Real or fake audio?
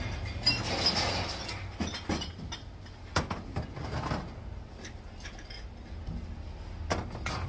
real